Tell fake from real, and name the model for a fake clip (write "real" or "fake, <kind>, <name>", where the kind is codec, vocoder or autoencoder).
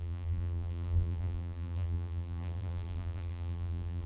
fake, vocoder, BigVGAN v2